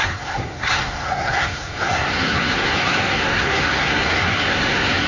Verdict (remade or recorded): remade